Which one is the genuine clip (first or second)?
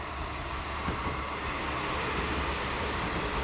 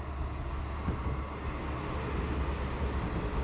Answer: second